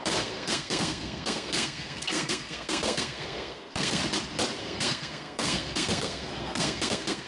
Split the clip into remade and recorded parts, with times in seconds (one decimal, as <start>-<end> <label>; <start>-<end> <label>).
0.0-4.0 remade; 4.0-4.6 recorded; 4.6-7.3 remade